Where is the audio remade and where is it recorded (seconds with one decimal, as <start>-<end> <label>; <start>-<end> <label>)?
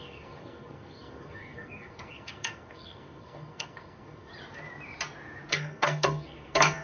0.0-4.3 remade; 4.3-5.5 recorded; 5.5-6.8 remade